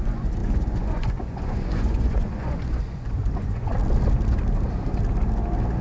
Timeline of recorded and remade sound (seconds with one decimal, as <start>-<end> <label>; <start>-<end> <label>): 0.0-3.7 remade; 3.7-5.8 recorded